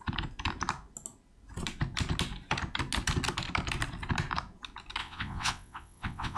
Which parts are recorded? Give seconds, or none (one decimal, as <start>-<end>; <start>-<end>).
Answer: 0.0-5.0